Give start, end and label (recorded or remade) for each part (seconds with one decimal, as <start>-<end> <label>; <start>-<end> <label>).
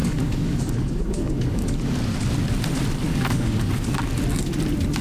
0.0-1.7 remade; 1.7-3.1 recorded; 3.1-3.7 remade; 3.7-5.0 recorded